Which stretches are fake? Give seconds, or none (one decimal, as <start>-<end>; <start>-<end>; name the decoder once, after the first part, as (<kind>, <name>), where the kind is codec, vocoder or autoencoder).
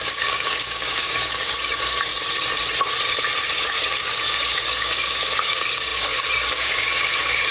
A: 0.0-2.1 (codec, DAC); 3.6-7.5